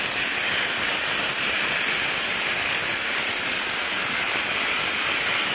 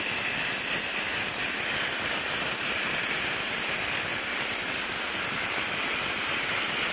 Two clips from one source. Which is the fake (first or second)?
second